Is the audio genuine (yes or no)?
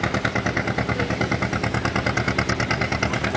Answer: yes